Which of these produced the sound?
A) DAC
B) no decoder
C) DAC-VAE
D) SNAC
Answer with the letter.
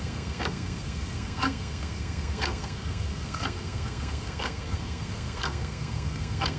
D